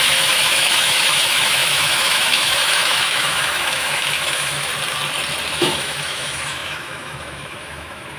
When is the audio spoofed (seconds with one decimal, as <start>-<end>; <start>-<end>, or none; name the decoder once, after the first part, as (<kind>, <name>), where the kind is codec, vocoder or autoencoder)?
0.0-4.7 (autoencoder, DAC-VAE); 5.5-8.2

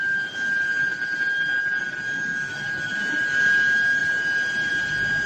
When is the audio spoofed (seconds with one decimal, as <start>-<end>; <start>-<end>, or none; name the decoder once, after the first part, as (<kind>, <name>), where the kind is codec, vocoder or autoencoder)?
2.3-3.5 (autoencoder, DAC-VAE)

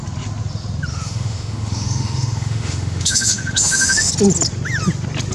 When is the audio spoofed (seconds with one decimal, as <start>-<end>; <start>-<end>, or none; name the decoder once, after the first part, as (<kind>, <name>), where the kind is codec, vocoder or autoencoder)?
0.9-4.1 (autoencoder, DAC-VAE)

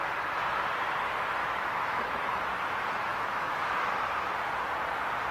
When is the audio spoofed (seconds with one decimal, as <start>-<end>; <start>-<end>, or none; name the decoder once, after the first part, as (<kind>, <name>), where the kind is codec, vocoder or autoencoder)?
1.4-2.4 (autoencoder, DAC-VAE); 3.1-3.9

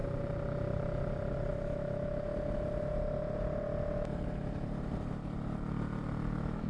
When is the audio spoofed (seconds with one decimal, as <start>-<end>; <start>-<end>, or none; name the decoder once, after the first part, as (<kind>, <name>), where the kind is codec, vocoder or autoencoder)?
1.5-2.3 (autoencoder, DAC-VAE); 6.3-6.7

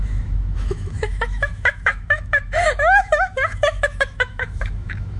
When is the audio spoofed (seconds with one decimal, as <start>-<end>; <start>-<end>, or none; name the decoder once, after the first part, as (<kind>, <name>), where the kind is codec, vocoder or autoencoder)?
0.0-5.2 (autoencoder, DAC-VAE)